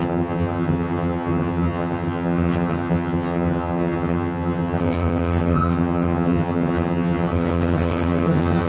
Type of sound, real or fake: fake